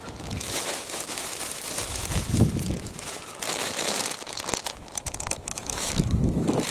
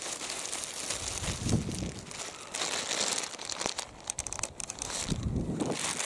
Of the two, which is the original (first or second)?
second